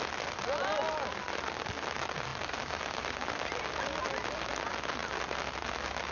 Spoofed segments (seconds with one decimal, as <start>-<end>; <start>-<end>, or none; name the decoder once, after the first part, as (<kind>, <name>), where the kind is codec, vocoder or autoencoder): none